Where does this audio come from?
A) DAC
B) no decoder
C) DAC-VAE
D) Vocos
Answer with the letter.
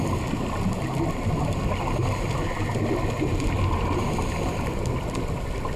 B